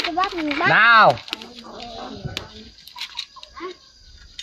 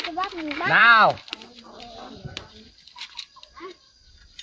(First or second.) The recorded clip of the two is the first